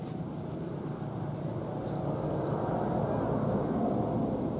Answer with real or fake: real